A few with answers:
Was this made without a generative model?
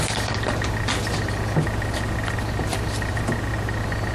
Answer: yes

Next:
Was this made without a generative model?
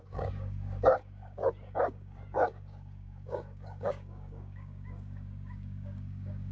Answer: no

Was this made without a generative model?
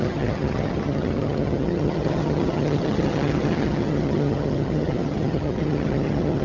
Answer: no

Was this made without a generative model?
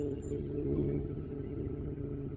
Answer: no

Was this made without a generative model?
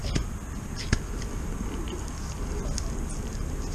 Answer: yes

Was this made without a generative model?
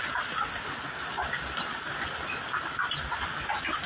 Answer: yes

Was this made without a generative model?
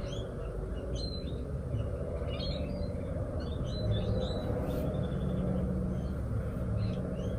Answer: yes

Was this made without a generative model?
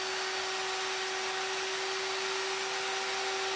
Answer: yes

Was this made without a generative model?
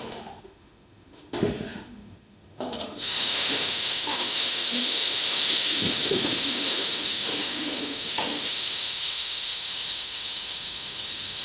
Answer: no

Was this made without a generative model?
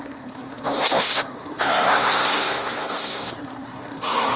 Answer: no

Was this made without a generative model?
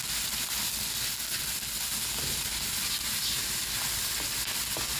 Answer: yes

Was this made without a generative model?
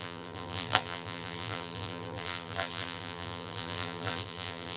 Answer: no